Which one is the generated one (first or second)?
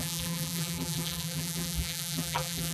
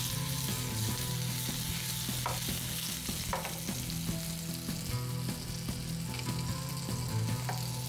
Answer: first